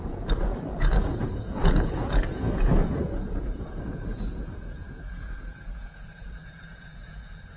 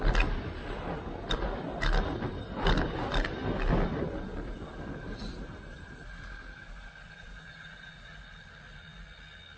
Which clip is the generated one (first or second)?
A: first